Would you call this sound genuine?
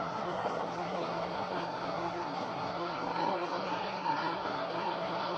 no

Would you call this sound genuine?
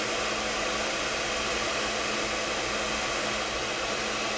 yes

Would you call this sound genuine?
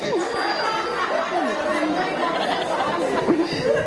yes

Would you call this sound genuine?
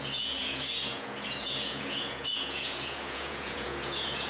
no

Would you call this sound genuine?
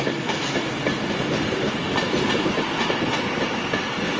yes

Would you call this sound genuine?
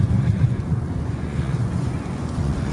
no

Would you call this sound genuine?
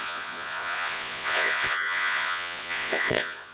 no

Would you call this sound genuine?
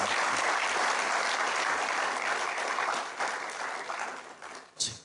yes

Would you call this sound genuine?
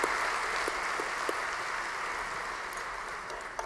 yes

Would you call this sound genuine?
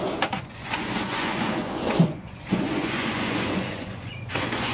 no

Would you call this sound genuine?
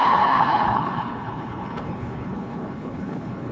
no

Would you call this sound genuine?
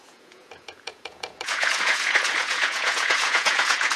no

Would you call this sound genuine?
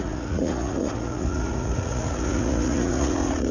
no